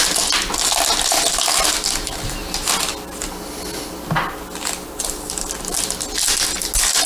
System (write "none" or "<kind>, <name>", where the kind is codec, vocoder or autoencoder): none